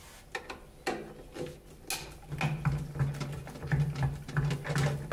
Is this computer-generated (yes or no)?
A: no